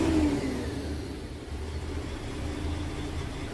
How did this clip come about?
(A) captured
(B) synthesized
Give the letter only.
A